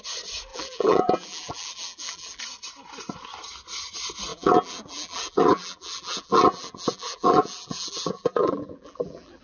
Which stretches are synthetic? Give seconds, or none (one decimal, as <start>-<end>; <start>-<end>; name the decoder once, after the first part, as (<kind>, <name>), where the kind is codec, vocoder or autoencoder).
0.5-2.4 (vocoder, BigVGAN v2); 4.3-9.4